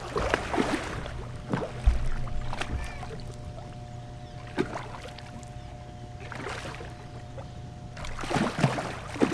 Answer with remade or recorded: recorded